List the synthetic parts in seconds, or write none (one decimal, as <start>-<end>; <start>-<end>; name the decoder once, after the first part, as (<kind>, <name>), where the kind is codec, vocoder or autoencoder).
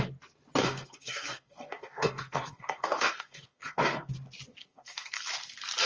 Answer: 0.6-4.1 (codec, SNAC); 4.6-5.3